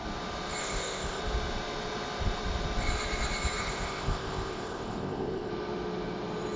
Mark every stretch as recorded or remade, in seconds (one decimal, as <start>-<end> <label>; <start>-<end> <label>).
0.0-0.6 recorded; 0.6-1.2 remade; 1.2-3.6 recorded; 3.6-5.5 remade; 5.5-6.6 recorded